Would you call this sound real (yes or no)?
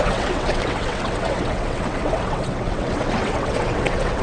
no